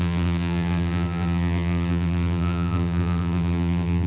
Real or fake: fake